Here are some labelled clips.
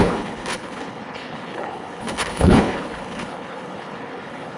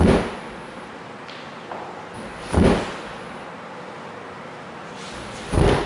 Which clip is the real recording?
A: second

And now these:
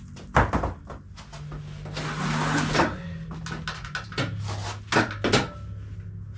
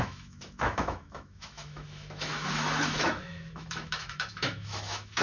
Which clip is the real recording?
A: first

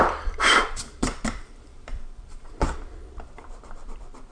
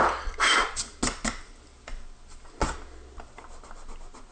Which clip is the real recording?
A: second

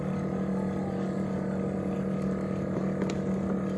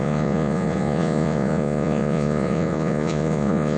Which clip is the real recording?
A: first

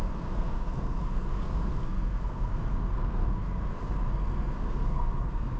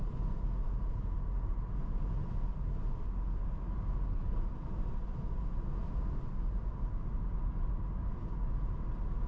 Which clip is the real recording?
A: second